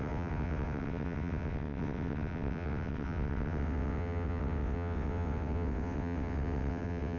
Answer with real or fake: fake